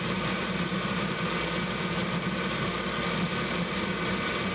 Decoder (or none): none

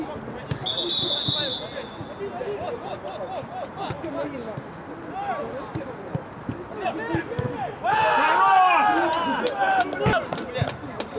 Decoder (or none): none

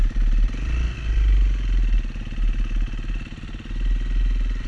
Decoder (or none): none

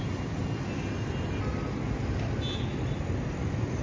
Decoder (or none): none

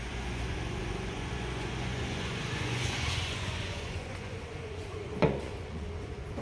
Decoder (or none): vocoder, Vocos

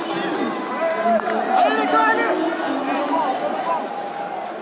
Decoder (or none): none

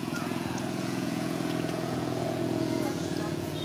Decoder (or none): vocoder, Vocos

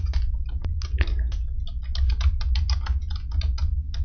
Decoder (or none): none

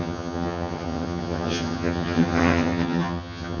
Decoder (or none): vocoder, HiFi-GAN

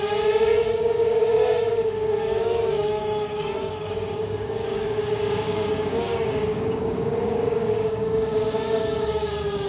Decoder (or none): codec, DAC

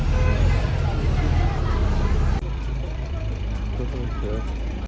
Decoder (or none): vocoder, BigVGAN v2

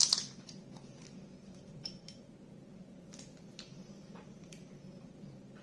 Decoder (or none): vocoder, BigVGAN v2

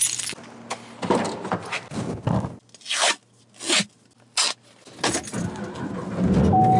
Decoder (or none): none